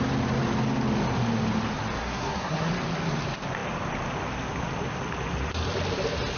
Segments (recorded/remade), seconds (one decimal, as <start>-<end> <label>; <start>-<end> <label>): 0.0-2.0 recorded; 2.0-2.7 remade; 2.7-6.4 recorded